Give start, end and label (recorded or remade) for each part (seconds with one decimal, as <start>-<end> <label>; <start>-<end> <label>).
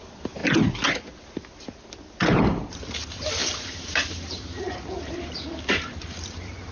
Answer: 0.0-3.4 recorded; 3.4-6.7 remade